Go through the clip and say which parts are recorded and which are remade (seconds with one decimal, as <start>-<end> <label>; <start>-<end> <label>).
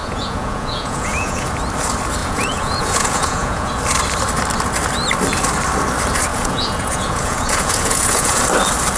0.0-1.5 remade; 1.5-2.2 recorded; 2.2-3.7 remade; 3.7-6.3 recorded; 6.3-8.4 remade; 8.4-9.0 recorded